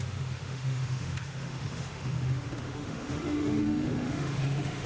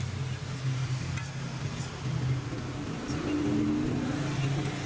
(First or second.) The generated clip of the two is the first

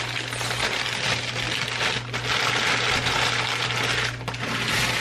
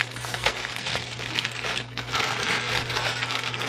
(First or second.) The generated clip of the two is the second